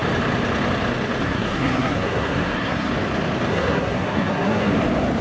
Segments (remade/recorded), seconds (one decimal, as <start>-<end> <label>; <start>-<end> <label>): 0.0-1.2 recorded; 1.2-2.9 remade; 2.9-3.5 recorded; 3.5-4.7 remade; 4.7-5.2 recorded